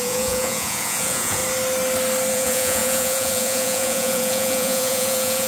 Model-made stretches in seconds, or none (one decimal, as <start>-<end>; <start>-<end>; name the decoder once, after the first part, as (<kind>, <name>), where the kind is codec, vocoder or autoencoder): 0.0-1.4 (vocoder, Vocos); 2.3-5.5